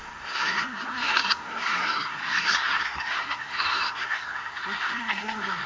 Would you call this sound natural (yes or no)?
no